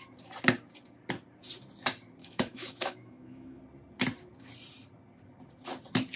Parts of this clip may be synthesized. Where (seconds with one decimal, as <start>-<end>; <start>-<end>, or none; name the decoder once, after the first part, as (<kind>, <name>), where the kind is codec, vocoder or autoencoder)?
2.2-3.6 (autoencoder, DAC-VAE)